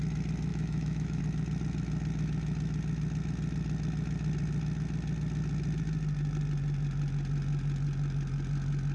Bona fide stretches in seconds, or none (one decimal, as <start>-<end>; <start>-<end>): 0.0-0.5; 1.2-8.9